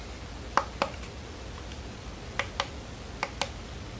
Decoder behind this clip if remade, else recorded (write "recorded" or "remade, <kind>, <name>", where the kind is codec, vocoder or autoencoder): recorded